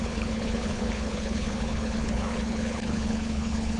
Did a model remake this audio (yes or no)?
yes